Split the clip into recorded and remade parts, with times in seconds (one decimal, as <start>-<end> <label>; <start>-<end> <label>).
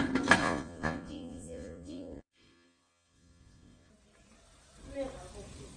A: 0.0-0.4 recorded; 0.4-3.9 remade; 3.9-5.8 recorded